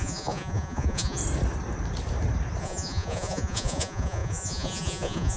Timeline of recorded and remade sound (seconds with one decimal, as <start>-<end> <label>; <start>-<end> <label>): 0.0-1.2 remade; 1.2-2.6 recorded; 2.6-5.4 remade